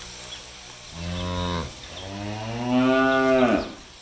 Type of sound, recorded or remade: recorded